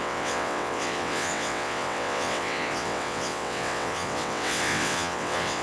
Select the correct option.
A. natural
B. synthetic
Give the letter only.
B